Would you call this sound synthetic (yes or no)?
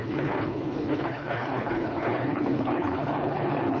yes